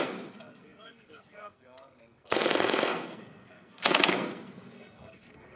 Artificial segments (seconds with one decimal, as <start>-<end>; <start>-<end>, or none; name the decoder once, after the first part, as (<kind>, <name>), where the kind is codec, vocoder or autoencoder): 0.0-5.6 (codec, SNAC)